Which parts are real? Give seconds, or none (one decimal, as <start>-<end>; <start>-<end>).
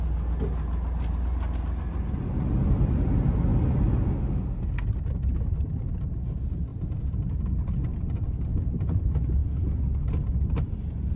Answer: 0.0-3.5; 4.2-6.7; 8.6-11.2